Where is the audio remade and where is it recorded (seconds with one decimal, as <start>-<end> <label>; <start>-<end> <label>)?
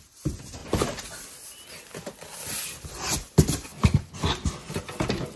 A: 0.0-5.4 recorded